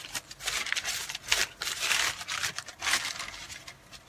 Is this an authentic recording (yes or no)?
yes